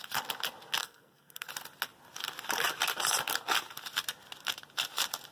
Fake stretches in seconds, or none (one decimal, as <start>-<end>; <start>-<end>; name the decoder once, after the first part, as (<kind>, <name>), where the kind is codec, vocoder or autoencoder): 0.8-1.5 (codec, SNAC)

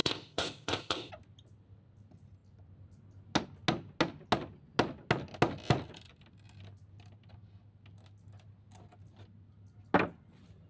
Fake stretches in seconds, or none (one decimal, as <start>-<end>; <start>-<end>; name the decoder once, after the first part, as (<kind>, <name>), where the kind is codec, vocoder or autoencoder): 0.0-1.1 (codec, ZipCodec)

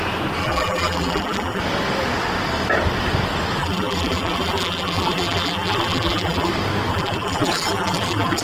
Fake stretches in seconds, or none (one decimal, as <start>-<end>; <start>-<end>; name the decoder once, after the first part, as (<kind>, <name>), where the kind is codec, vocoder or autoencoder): 0.4-1.6 (vocoder, BigVGAN v2); 3.6-6.5; 6.9-8.4

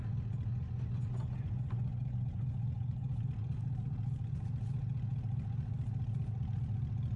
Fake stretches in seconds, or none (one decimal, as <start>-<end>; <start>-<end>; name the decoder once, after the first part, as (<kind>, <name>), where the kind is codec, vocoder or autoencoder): 0.5-3.2 (vocoder, Vocos)

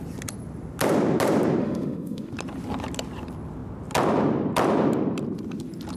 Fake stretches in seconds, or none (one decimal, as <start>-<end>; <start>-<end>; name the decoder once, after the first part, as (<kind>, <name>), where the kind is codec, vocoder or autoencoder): 1.6-2.3 (autoencoder, DAC-VAE)

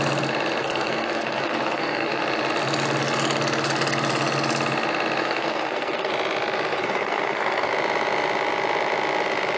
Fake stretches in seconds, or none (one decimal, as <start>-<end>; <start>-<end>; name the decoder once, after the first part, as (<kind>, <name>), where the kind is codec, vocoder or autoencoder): 0.6-2.2 (codec, SNAC); 5.2-6.1; 6.7-7.7